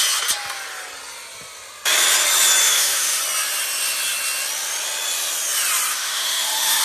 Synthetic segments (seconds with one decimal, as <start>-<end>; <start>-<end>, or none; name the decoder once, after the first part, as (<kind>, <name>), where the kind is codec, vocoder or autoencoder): 2.6-3.2 (autoencoder, DAC-VAE); 5.9-6.8